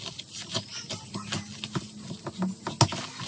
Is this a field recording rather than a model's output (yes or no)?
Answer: yes